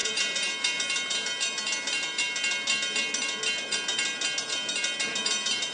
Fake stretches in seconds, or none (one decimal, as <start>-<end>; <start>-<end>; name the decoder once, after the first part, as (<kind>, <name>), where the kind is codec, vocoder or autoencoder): 0.0-0.5 (vocoder, Vocos)